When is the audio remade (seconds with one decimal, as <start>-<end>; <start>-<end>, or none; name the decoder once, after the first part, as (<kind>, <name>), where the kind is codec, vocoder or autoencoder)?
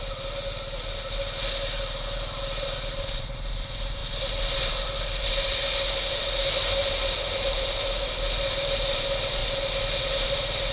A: none